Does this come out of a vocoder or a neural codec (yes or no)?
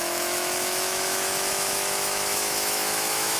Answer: yes